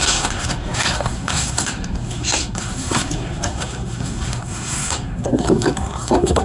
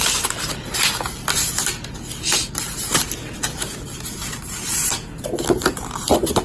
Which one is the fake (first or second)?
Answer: first